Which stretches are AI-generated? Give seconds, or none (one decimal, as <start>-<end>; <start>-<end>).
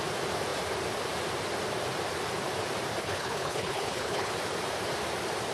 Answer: 3.0-4.3